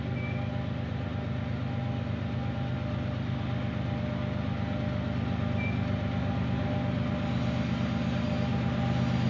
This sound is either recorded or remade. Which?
recorded